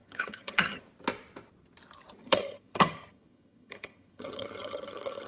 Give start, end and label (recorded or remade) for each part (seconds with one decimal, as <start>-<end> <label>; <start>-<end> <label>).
0.0-0.8 remade; 0.8-2.2 recorded; 2.2-5.3 remade